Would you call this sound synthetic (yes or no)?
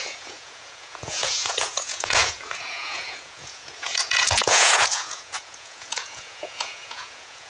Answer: yes